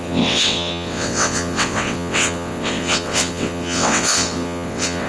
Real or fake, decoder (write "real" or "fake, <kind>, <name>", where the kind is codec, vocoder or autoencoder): fake, vocoder, WaveNeXt